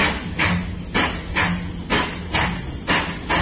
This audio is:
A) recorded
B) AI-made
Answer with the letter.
A